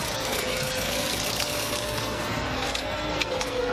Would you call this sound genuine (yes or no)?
no